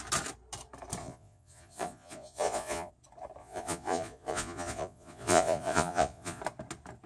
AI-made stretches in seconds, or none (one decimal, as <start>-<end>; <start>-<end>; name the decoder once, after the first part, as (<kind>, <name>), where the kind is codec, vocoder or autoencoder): 1.0-2.9 (vocoder, Vocos); 3.4-6.4